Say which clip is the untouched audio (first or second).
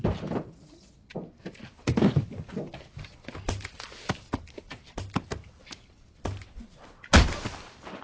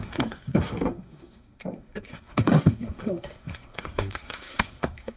first